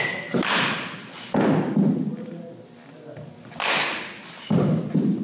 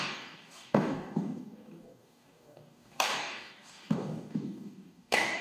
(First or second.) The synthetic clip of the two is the second